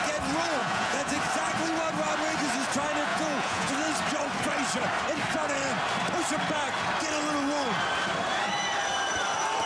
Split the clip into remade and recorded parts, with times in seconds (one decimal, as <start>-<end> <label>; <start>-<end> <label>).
0.0-0.6 recorded; 0.6-1.2 remade; 1.2-3.1 recorded; 3.1-3.7 remade; 3.7-9.7 recorded